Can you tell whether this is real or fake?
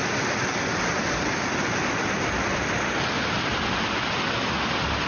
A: fake